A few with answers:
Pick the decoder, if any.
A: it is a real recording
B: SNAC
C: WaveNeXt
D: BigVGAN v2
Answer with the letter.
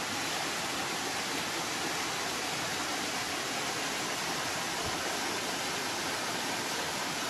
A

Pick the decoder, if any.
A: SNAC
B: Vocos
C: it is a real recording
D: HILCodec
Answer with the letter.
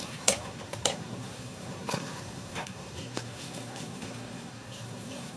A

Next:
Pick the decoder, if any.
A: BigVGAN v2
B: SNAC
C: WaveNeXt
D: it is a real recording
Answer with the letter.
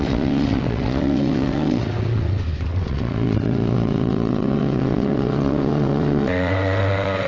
C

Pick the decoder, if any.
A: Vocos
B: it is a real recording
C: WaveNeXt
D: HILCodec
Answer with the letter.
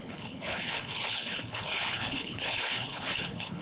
D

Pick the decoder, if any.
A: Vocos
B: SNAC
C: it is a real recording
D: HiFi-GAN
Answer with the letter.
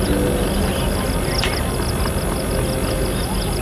C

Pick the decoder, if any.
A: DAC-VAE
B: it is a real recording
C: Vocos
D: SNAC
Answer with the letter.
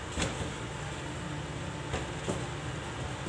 B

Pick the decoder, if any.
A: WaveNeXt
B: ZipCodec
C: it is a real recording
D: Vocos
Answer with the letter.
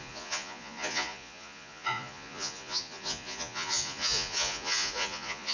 D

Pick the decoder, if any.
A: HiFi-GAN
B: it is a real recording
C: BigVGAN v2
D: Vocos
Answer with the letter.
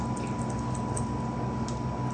B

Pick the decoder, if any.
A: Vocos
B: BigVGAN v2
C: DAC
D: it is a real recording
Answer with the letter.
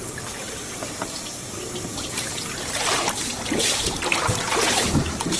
B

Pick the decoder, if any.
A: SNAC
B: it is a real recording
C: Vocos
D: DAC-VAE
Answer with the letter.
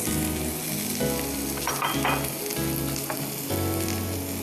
B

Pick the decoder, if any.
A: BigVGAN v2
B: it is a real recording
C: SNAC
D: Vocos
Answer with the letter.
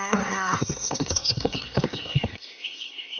C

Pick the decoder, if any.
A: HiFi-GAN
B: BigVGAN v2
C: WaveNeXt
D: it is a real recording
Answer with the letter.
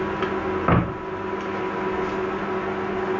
D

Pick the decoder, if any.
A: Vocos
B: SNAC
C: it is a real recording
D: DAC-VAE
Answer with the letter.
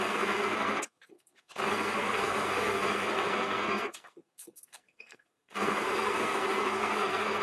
B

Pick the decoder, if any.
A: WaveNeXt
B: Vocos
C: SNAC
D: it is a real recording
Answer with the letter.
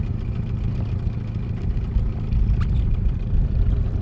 D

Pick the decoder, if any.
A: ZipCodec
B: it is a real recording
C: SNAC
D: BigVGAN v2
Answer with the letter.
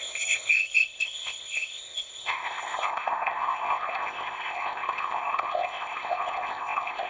A